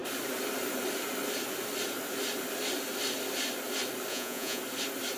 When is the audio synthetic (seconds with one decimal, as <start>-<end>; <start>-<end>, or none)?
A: 4.1-4.6